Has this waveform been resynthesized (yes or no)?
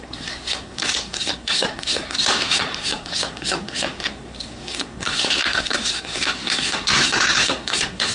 yes